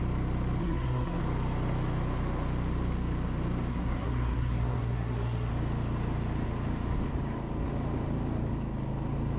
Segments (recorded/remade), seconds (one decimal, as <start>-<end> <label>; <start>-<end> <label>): 0.0-0.6 recorded; 0.6-1.2 remade; 1.2-3.7 recorded; 3.7-5.5 remade; 5.5-9.4 recorded